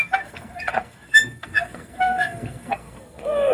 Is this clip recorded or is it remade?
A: remade